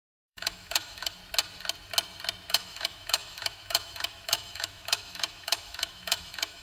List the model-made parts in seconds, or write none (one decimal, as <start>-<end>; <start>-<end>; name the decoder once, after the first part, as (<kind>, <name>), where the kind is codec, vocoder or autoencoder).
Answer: 0.0-1.2 (autoencoder, DAC-VAE); 2.5-6.6